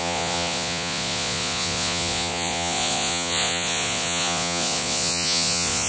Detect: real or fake fake